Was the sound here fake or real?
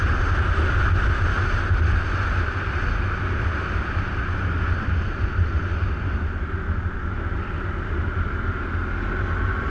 real